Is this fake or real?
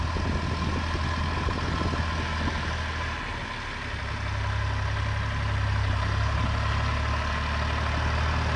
real